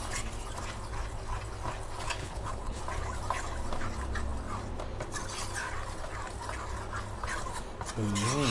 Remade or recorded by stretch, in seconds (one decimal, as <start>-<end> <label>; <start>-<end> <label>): 0.0-2.2 recorded; 2.2-2.8 remade; 2.8-8.5 recorded